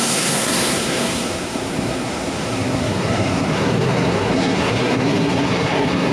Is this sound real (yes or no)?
no